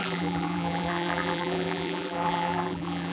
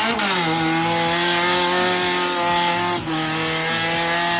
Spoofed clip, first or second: first